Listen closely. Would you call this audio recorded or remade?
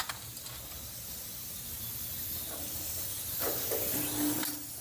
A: recorded